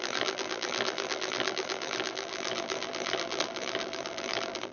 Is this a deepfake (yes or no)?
yes